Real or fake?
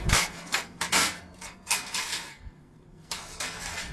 fake